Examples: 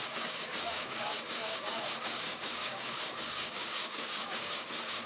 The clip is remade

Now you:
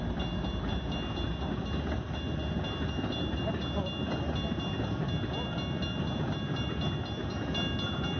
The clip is recorded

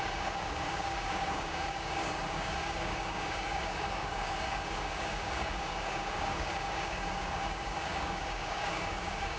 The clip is remade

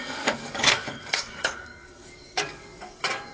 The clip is remade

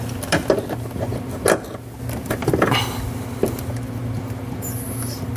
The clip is recorded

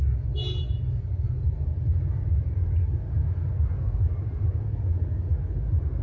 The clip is recorded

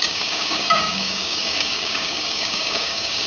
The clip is remade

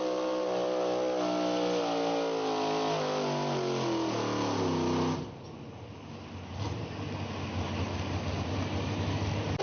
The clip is recorded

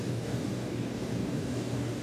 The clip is remade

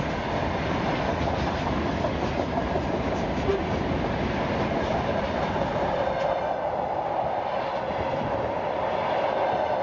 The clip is recorded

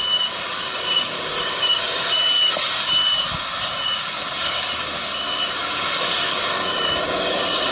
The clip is remade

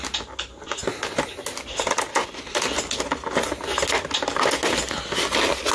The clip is recorded